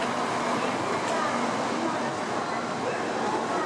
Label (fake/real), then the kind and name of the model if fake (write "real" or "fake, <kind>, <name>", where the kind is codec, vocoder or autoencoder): real